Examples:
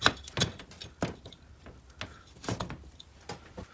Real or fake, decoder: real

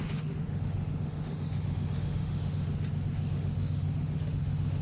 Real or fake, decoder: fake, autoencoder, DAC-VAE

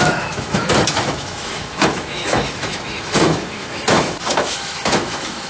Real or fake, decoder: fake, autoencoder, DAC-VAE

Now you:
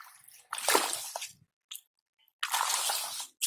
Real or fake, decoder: real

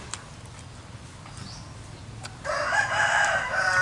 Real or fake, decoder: real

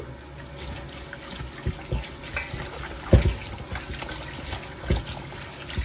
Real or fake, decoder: real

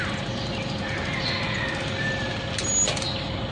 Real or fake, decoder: real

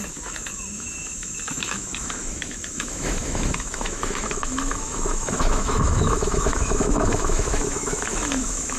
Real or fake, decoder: fake, autoencoder, DAC-VAE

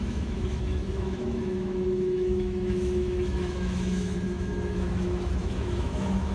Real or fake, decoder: fake, autoencoder, DAC-VAE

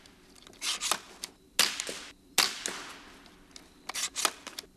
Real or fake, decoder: real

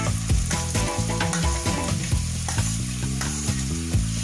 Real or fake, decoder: real